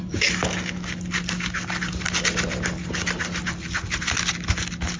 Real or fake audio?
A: real